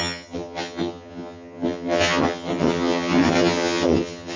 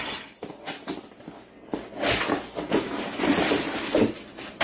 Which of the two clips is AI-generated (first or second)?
first